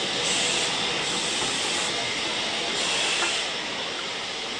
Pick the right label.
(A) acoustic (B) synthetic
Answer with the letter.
A